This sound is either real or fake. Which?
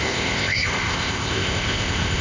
fake